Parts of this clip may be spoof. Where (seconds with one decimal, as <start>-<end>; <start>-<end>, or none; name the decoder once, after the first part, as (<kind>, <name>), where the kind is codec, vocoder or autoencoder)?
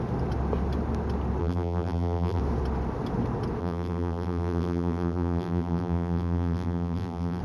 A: 1.4-2.4 (vocoder, BigVGAN v2); 3.6-7.4